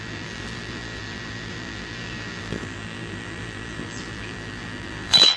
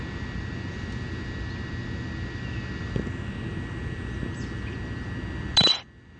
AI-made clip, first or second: first